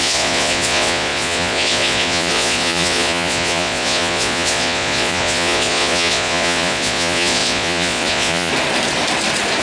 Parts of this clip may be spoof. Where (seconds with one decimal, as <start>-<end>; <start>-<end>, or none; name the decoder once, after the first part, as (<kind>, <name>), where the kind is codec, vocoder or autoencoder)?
0.0-8.5 (vocoder, Vocos)